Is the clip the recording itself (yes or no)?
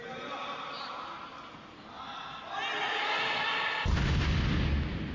yes